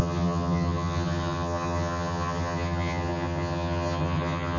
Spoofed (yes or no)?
yes